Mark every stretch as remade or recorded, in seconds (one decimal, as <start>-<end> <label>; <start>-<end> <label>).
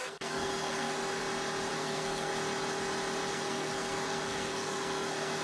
0.0-1.2 remade; 1.2-1.7 recorded; 1.7-2.3 remade; 2.3-3.3 recorded; 3.3-5.4 remade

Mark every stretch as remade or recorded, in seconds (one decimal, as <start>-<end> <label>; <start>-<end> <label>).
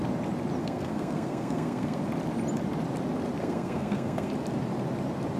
0.0-0.6 recorded; 0.6-2.0 remade; 2.0-3.4 recorded; 3.4-4.3 remade; 4.3-5.4 recorded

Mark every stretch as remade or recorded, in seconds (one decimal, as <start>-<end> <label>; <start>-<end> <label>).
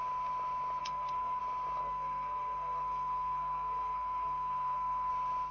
0.0-0.8 recorded; 0.8-1.4 remade; 1.4-1.8 recorded; 1.8-5.1 remade; 5.1-5.5 recorded